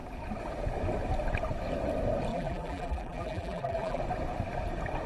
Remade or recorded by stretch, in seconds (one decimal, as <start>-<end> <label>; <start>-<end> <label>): 0.0-2.3 recorded; 2.3-4.0 remade; 4.0-5.1 recorded

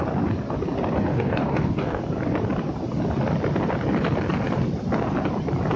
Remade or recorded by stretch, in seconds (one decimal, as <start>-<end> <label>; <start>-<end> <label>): 0.0-1.1 recorded; 1.1-2.0 remade; 2.0-5.8 recorded